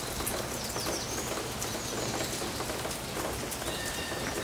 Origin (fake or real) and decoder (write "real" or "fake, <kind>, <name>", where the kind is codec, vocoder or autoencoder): real